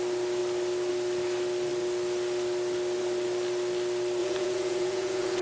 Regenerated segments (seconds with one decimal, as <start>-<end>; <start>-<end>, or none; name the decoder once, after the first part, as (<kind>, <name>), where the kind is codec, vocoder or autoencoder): 4.2-5.4 (vocoder, Vocos)